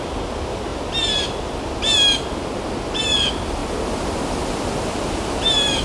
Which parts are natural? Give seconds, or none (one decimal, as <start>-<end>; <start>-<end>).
0.0-5.8